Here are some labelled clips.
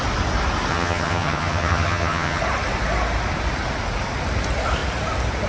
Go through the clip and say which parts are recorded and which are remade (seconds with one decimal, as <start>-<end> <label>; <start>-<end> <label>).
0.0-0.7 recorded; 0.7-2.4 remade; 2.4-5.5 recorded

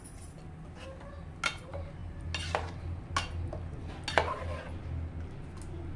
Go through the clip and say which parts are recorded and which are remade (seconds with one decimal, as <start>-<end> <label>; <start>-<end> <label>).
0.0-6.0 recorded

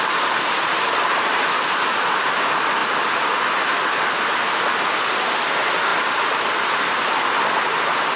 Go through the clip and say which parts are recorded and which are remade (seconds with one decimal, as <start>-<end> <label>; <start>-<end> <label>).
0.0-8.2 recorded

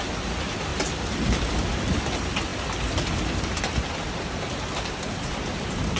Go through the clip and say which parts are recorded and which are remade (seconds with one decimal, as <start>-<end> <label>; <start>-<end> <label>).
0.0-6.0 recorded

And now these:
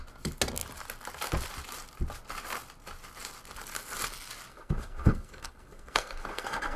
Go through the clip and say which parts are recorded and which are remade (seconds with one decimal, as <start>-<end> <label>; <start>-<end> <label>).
0.0-4.5 recorded; 4.5-6.8 remade

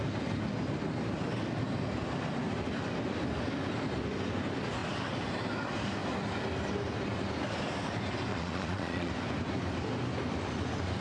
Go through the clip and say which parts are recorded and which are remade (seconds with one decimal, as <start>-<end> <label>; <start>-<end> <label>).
0.0-8.3 recorded; 8.3-9.1 remade; 9.1-11.0 recorded

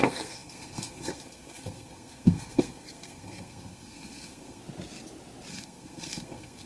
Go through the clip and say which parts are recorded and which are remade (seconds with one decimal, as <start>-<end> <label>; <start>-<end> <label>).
0.0-4.6 remade; 4.6-5.5 recorded; 5.5-6.7 remade